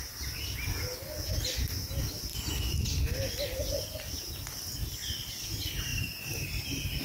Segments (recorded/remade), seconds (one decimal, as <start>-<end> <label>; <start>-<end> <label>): 0.0-5.9 recorded; 5.9-6.6 remade; 6.6-7.0 recorded